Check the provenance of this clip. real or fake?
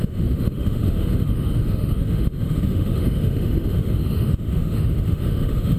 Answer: fake